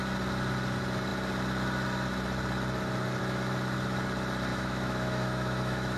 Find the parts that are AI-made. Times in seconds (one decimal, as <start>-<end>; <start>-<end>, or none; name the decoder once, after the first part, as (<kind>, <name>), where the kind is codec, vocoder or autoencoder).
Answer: 4.5-6.0 (autoencoder, DAC-VAE)